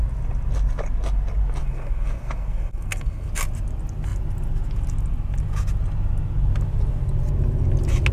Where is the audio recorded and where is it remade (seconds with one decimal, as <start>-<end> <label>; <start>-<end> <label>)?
0.0-1.6 recorded; 1.6-3.3 remade; 3.3-8.1 recorded